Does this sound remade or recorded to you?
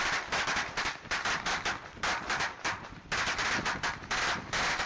remade